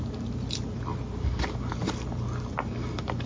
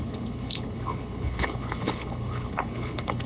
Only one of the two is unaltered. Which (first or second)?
first